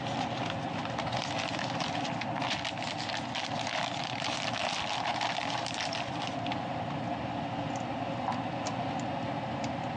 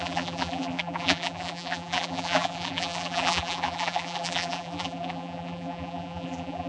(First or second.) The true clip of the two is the first